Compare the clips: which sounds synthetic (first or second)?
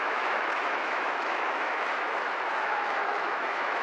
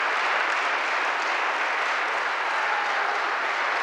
first